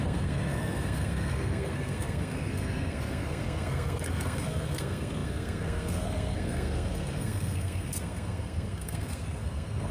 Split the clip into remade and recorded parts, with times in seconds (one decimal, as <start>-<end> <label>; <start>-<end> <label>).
0.0-9.9 remade